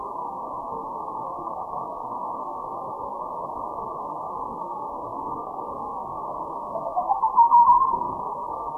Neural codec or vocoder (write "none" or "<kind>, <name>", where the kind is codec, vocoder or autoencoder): codec, SNAC